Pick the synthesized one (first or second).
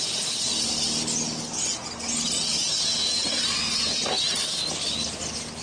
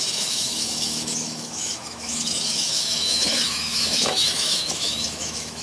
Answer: second